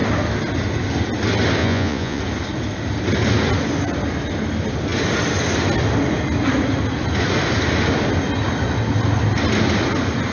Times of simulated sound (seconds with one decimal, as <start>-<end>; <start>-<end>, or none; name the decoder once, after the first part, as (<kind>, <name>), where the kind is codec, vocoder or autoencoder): 1.6-2.2 (vocoder, Vocos)